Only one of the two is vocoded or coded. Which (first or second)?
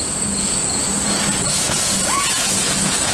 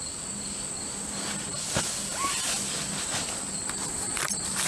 first